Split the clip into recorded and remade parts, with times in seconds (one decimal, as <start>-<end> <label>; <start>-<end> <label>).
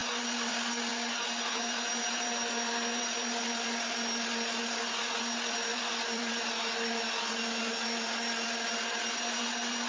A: 0.0-0.5 remade; 0.5-5.7 recorded; 5.7-6.4 remade; 6.4-9.9 recorded